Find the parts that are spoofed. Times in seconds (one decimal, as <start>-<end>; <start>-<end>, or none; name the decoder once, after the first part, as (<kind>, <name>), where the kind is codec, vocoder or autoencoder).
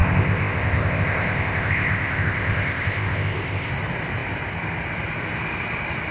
0.0-3.7 (codec, ZipCodec)